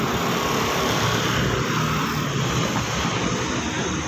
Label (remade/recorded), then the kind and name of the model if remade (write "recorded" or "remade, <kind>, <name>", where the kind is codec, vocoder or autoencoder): recorded